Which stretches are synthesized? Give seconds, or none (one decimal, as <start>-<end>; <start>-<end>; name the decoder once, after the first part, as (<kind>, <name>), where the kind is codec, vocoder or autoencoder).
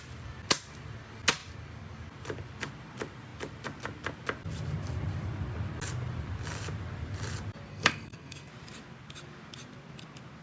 7.7-8.5 (codec, SNAC)